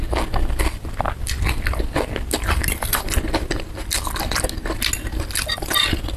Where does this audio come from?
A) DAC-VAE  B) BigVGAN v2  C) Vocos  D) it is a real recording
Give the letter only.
D